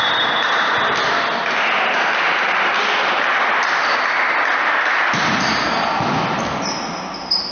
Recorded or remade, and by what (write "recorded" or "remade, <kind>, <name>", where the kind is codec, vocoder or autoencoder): recorded